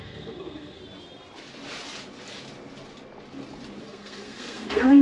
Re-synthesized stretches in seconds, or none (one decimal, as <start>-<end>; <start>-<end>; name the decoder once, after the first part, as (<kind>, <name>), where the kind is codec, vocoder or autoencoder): 0.0-0.8 (codec, SNAC); 3.8-5.0